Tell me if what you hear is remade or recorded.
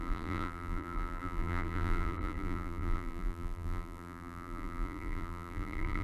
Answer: remade